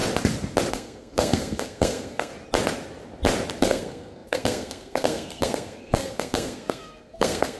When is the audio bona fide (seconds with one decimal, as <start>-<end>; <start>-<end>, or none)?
0.0-0.7; 2.3-3.6